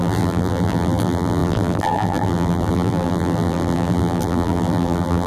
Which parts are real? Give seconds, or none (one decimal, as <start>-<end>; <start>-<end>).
none